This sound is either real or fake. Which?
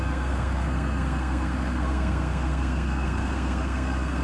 fake